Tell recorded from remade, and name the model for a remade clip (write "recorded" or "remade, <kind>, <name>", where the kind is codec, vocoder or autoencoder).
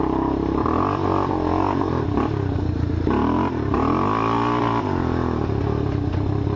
recorded